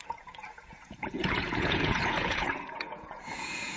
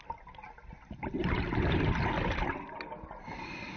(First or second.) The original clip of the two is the second